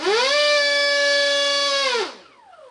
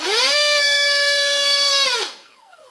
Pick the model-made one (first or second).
second